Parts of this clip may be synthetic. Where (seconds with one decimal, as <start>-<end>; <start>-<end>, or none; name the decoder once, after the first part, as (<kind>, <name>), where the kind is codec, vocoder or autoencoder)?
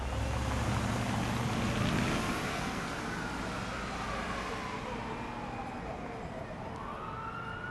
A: 2.5-3.0 (codec, SNAC)